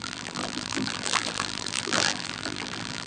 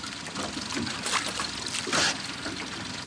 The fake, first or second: first